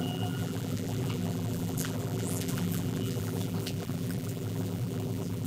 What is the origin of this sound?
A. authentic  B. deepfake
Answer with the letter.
B